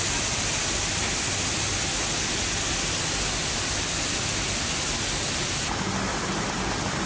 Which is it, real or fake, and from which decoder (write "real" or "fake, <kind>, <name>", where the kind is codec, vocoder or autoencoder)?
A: real